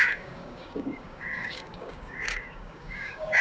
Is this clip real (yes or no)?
no